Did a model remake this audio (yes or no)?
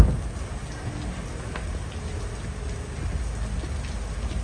no